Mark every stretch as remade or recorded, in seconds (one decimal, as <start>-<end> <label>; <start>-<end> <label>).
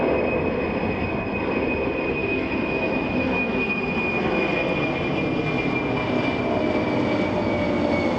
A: 0.0-2.2 recorded; 2.2-3.8 remade; 3.8-8.2 recorded